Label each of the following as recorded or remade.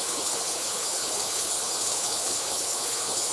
remade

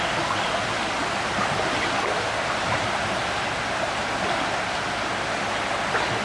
recorded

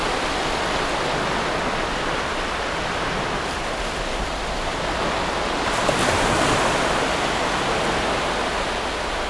recorded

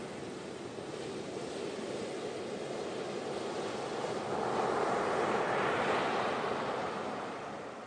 recorded